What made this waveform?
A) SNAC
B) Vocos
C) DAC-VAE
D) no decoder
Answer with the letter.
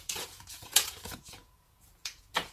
B